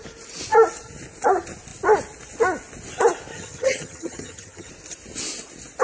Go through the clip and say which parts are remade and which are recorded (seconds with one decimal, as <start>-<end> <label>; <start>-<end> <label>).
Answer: 0.0-3.3 recorded; 3.3-4.7 remade; 4.7-5.8 recorded